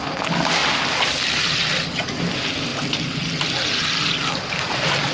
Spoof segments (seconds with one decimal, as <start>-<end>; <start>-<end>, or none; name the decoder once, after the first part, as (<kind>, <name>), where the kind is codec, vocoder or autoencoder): none